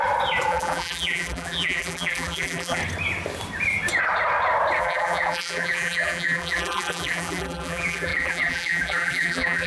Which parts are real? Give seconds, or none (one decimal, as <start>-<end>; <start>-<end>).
0.0-0.5; 2.8-4.8